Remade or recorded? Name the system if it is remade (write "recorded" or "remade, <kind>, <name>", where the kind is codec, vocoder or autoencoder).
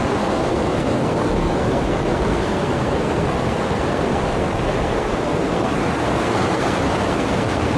remade, codec, SNAC